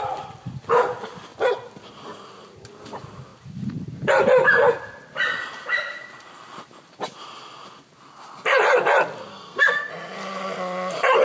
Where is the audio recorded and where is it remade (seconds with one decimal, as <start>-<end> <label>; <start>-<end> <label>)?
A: 0.0-9.3 recorded; 9.3-9.9 remade; 9.9-11.2 recorded